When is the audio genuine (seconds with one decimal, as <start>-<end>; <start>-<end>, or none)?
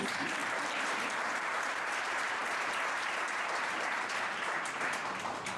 none